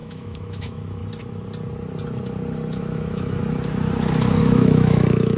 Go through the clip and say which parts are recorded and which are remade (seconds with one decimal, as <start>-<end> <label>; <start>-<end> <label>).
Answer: 0.0-1.0 remade; 1.0-2.8 recorded; 2.8-3.4 remade; 3.4-4.4 recorded; 4.4-5.4 remade